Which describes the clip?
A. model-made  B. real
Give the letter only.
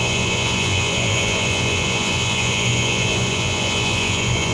A